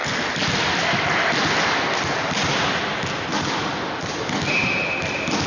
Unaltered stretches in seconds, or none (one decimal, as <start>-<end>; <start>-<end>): 0.0-5.5